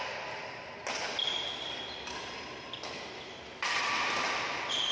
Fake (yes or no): no